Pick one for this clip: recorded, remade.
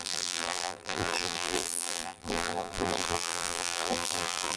remade